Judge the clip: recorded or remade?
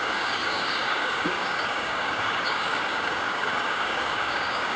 remade